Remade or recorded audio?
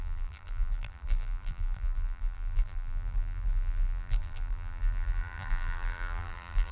remade